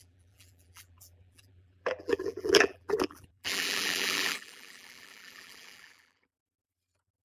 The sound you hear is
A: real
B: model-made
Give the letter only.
B